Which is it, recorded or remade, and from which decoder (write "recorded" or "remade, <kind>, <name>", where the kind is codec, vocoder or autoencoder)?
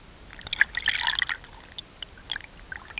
recorded